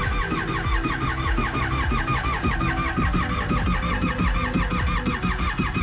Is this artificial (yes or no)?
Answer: no